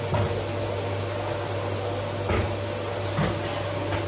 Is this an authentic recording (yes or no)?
yes